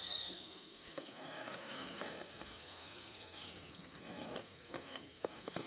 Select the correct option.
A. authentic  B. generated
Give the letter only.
B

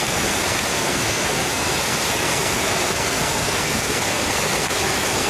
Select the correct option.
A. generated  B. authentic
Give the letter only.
A